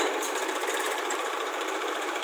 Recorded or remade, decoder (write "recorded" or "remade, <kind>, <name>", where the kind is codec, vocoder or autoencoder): remade, vocoder, BigVGAN v2